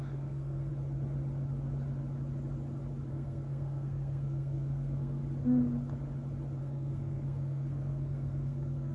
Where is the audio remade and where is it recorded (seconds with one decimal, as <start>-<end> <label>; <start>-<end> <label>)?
0.0-0.7 remade; 0.7-3.1 recorded; 3.1-5.2 remade; 5.2-6.6 recorded; 6.6-8.9 remade